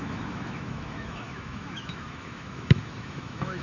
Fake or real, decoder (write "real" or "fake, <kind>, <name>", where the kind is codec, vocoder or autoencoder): fake, autoencoder, DAC-VAE